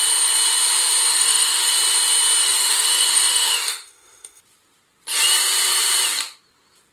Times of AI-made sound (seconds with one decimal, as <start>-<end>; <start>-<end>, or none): 1.1-1.7; 2.4-4.4